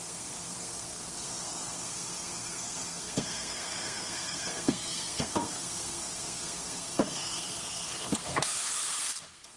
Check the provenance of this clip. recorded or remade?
remade